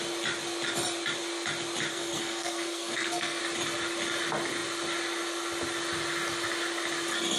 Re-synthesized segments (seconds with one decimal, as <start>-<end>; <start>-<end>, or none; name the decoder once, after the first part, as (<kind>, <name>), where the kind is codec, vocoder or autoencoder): 1.9-3.4 (codec, SNAC)

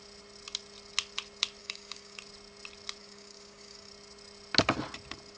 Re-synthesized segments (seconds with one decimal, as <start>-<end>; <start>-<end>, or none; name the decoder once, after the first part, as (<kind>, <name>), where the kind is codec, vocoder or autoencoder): 1.6-2.2 (codec, DAC); 3.0-3.9

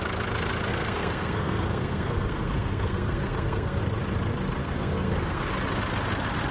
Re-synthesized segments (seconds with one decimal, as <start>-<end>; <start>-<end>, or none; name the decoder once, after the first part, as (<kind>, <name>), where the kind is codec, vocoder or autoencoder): 0.7-3.8 (codec, SNAC); 4.6-5.4

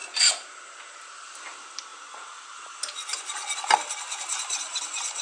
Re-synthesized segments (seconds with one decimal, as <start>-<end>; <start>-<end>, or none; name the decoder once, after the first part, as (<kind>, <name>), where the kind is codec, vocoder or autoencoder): 0.0-1.4 (vocoder, BigVGAN v2)

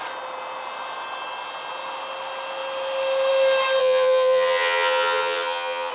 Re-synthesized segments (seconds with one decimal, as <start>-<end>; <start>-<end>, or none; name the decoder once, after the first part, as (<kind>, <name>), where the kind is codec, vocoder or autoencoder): 3.8-5.9 (vocoder, HiFi-GAN)

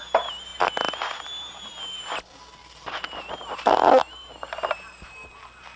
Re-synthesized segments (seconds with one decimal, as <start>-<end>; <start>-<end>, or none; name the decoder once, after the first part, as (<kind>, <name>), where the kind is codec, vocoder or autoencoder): none